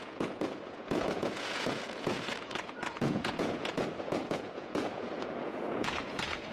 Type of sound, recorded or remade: remade